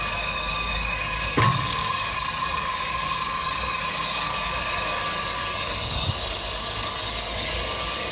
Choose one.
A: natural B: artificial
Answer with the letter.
B